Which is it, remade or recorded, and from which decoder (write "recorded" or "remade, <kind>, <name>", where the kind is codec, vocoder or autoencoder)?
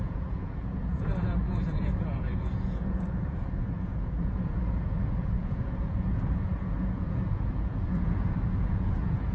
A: remade, vocoder, Vocos